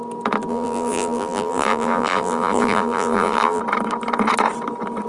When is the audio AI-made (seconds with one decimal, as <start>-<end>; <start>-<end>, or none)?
0.5-3.6